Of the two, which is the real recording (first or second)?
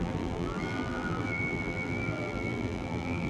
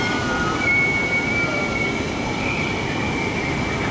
second